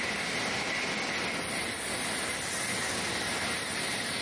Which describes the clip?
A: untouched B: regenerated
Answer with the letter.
A